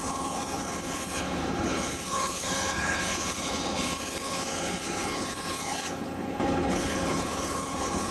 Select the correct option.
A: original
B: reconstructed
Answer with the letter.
B